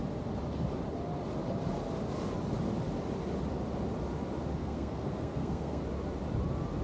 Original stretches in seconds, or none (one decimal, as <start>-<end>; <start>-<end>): 0.0-4.6; 5.8-6.8